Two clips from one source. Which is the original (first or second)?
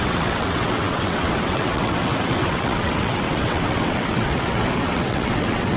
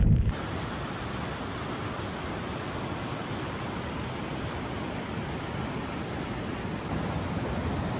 second